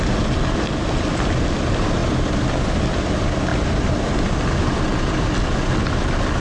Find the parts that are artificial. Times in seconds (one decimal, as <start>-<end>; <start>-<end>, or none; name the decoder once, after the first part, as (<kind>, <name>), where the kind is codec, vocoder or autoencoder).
none